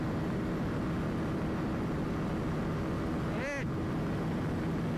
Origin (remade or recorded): recorded